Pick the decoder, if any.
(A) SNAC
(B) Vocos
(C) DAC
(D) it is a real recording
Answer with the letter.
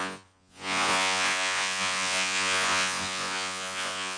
B